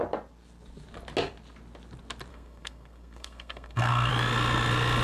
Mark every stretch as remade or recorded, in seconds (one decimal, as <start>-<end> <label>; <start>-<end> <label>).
0.0-2.3 recorded; 2.3-4.1 remade; 4.1-5.0 recorded